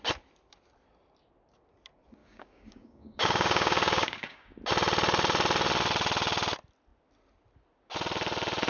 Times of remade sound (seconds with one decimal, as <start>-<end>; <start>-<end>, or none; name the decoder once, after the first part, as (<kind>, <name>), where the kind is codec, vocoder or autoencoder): 2.2-4.6 (codec, DAC)